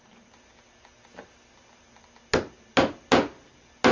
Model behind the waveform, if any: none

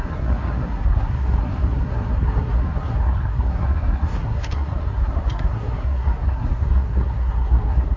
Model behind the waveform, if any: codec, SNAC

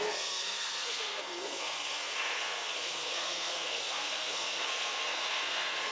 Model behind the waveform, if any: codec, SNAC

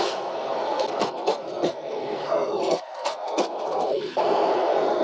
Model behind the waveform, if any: codec, SNAC